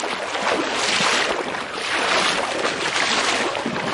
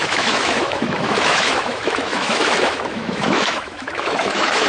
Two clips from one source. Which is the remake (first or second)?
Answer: second